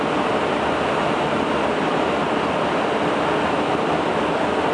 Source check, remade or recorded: recorded